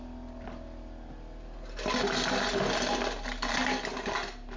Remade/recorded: recorded